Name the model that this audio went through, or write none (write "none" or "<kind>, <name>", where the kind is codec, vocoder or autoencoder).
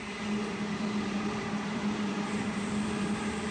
none